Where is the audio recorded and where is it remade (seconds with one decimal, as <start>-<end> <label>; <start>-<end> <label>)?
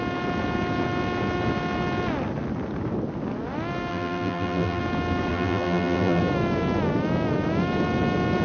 0.0-3.9 recorded; 3.9-4.8 remade; 4.8-5.3 recorded; 5.3-6.2 remade; 6.2-8.4 recorded